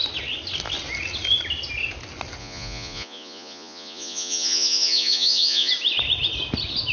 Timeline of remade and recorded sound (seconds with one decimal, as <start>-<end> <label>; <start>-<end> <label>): 0.0-2.4 recorded; 2.4-5.7 remade; 5.7-6.9 recorded